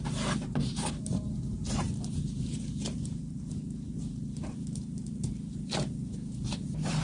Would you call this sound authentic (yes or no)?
no